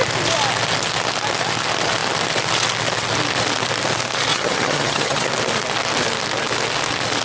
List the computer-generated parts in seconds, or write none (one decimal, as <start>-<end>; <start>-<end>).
4.3-5.3